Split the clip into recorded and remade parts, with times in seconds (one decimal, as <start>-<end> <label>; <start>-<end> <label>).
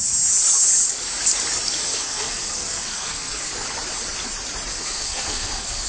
0.0-1.8 recorded; 1.8-3.5 remade; 3.5-4.7 recorded; 4.7-5.9 remade